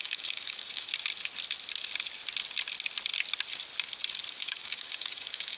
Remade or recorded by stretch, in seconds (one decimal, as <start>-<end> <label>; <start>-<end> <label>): 0.0-0.9 remade; 0.9-4.3 recorded; 4.3-5.6 remade